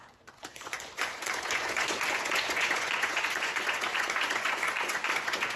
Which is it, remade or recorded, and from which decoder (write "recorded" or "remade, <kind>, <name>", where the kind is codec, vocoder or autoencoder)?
remade, vocoder, Vocos